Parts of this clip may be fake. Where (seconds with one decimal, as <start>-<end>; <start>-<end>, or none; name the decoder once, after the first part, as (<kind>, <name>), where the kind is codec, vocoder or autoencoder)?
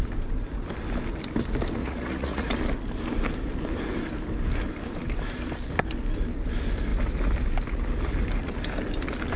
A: 1.8-2.5 (vocoder, Vocos)